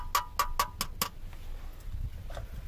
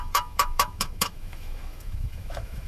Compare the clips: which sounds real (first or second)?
first